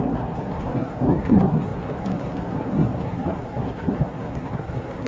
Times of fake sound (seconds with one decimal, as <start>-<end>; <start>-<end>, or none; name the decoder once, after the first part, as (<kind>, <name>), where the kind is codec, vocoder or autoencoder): 0.0-5.1 (codec, SNAC)